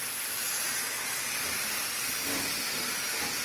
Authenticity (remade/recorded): recorded